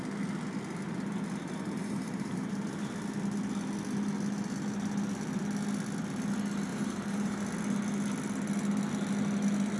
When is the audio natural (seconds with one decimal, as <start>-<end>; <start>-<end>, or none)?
0.0-1.8; 2.9-6.7; 7.4-9.8